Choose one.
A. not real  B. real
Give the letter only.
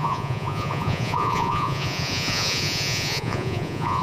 A